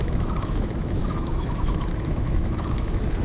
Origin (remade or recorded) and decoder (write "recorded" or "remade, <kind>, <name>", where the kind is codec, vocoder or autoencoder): remade, autoencoder, DAC-VAE